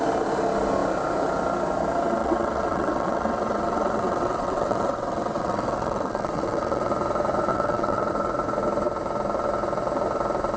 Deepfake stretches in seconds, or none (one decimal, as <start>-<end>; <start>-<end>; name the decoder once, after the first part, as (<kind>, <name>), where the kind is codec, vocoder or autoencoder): 2.2-6.9 (vocoder, WaveNeXt); 7.5-8.1

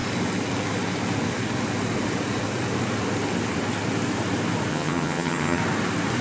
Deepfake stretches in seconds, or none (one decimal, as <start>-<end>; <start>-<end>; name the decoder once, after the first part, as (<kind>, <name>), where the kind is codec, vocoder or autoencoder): 4.7-5.6 (vocoder, HiFi-GAN)

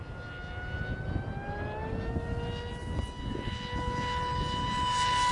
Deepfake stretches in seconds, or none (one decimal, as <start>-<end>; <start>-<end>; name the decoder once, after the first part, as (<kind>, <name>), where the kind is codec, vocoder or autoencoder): none